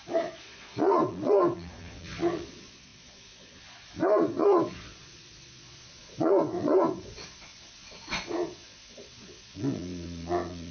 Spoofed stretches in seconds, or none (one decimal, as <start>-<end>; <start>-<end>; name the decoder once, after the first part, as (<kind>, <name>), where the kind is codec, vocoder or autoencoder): 0.0-10.7 (vocoder, Vocos)